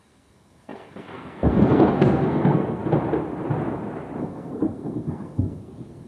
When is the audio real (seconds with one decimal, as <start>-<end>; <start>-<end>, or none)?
2.8-4.2

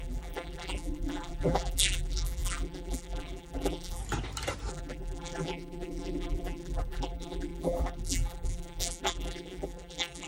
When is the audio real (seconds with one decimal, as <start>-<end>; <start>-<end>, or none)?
4.0-4.7

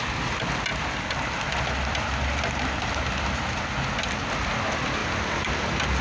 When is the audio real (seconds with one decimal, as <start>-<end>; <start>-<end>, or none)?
0.0-6.0

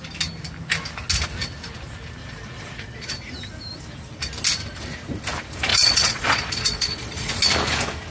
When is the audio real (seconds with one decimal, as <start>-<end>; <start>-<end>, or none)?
0.0-2.2; 3.1-5.7; 7.3-8.1

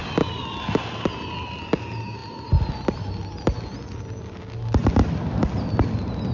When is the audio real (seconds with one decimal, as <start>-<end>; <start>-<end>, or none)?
0.0-6.3

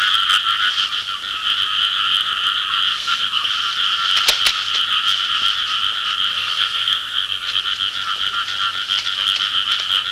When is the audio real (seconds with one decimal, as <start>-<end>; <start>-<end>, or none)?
0.0-2.9; 3.5-6.3; 7.6-10.1

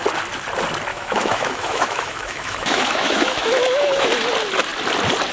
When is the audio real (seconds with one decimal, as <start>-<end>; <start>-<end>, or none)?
0.0-0.9; 4.1-5.3